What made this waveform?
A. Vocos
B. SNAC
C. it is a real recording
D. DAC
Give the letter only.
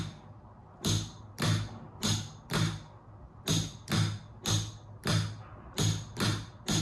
C